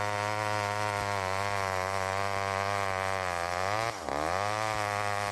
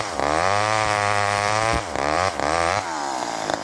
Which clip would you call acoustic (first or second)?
first